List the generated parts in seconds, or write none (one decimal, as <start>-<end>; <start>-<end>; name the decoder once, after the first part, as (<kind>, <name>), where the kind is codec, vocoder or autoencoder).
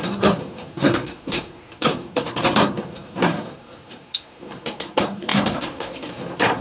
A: 0.0-6.6 (codec, SNAC)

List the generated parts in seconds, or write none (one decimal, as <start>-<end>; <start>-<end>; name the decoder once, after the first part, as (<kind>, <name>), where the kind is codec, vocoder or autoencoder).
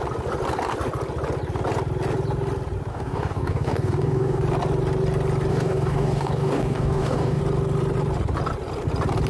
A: 2.9-4.4 (codec, DAC); 5.5-7.4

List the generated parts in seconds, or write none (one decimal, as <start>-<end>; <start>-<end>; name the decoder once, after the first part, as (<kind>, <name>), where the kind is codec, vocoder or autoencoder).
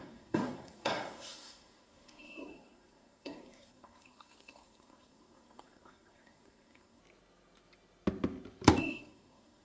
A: 0.0-7.0 (codec, SNAC); 8.8-9.6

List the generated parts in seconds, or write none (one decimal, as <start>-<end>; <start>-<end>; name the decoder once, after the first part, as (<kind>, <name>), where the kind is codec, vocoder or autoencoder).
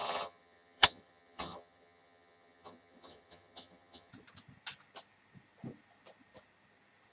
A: 0.0-4.1 (vocoder, HiFi-GAN)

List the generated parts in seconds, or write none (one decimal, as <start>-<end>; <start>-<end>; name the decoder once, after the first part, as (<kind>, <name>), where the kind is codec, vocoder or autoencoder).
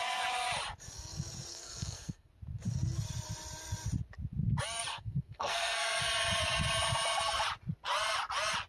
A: 1.5-2.3 (codec, SNAC); 4.9-6.0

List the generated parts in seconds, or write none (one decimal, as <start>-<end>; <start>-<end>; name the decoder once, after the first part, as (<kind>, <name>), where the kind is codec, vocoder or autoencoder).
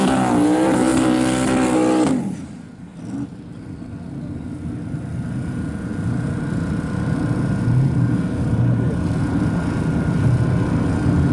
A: none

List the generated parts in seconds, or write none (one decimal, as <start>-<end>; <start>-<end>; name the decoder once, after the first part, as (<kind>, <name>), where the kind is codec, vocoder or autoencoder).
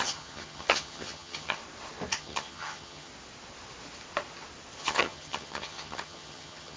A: 0.0-1.6 (vocoder, HiFi-GAN); 2.1-3.1; 4.8-6.8